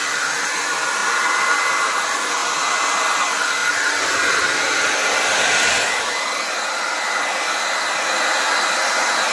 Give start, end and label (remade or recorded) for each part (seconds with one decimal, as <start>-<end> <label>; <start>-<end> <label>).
0.0-1.0 recorded; 1.0-2.0 remade; 2.0-9.3 recorded